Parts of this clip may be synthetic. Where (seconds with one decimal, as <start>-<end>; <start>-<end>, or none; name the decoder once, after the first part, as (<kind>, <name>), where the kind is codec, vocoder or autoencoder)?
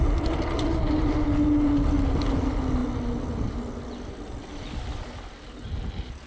none